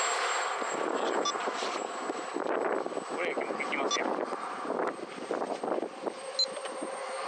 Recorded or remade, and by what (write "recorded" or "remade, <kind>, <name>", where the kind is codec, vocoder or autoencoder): recorded